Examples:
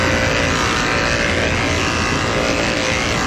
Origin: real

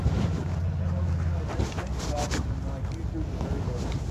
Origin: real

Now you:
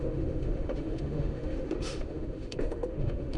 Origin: fake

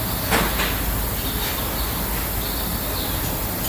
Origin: real